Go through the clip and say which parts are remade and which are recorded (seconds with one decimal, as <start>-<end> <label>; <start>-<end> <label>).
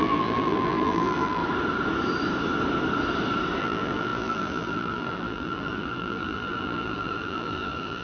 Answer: 0.0-1.4 remade; 1.4-3.6 recorded; 3.6-8.0 remade